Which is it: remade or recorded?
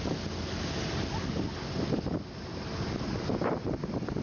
recorded